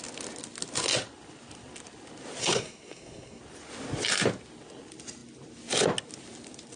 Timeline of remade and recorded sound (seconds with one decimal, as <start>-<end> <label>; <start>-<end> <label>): 0.0-2.4 recorded; 2.4-3.4 remade; 3.4-6.8 recorded